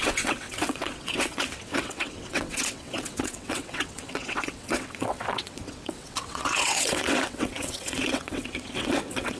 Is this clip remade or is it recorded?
remade